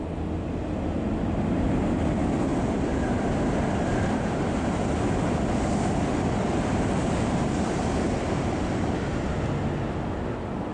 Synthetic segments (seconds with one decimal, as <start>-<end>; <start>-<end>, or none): none